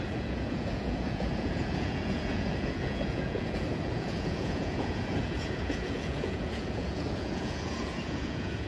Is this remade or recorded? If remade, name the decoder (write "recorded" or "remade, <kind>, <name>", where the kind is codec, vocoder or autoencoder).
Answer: remade, vocoder, Vocos